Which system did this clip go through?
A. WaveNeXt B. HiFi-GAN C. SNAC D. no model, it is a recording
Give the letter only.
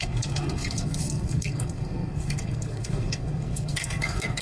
C